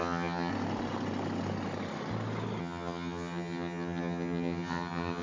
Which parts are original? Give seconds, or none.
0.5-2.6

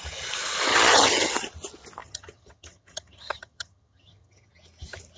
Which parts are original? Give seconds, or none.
0.0-0.7; 1.3-2.0; 4.5-5.2

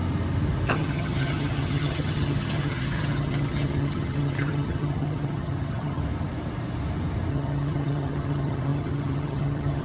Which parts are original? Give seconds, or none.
0.0-0.7; 6.0-7.3

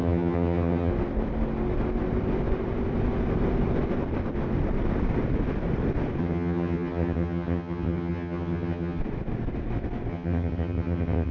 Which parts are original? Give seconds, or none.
0.9-6.2; 9.0-10.1

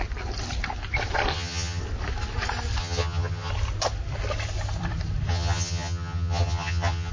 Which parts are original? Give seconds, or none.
0.0-1.3; 1.8-2.8; 3.5-5.3